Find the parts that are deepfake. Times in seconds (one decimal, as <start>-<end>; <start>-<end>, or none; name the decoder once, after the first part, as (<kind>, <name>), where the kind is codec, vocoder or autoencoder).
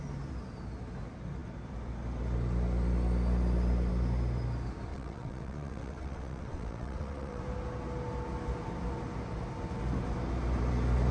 4.9-7.4 (vocoder, WaveNeXt)